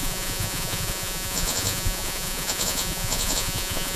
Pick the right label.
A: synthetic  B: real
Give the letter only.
A